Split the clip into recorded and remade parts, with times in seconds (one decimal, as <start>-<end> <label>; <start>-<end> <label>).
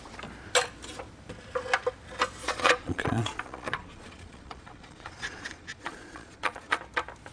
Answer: 0.0-2.4 recorded; 2.4-6.8 remade; 6.8-7.3 recorded